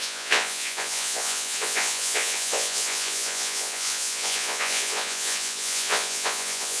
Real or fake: fake